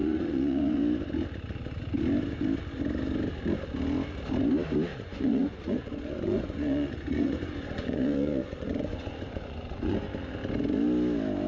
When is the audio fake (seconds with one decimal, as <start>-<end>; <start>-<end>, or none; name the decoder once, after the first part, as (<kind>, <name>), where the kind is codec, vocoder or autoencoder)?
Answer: 0.0-0.8 (vocoder, Vocos); 4.9-10.0